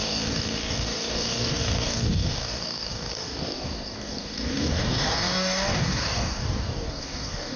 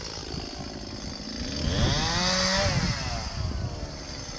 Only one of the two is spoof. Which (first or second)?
first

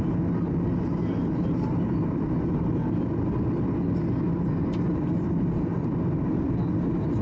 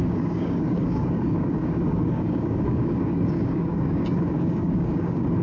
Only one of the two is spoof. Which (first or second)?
second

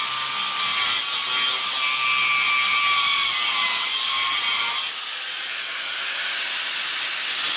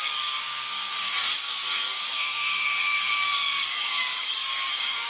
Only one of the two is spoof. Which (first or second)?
second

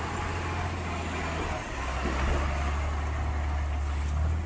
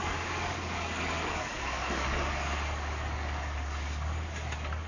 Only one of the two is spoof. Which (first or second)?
second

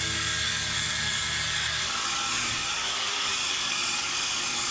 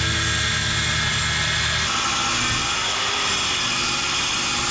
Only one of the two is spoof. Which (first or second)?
first